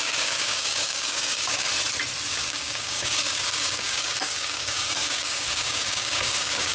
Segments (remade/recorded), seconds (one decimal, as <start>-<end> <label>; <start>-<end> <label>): 0.0-1.7 remade; 1.7-2.3 recorded; 2.3-6.7 remade